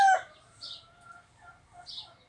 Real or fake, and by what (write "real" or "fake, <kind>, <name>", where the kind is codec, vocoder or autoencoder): real